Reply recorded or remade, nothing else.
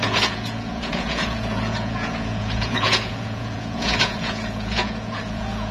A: remade